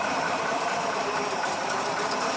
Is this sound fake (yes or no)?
yes